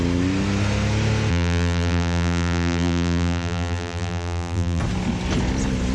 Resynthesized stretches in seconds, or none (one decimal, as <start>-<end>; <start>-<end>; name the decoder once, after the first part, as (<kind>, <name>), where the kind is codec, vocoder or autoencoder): 1.3-4.8 (vocoder, BigVGAN v2)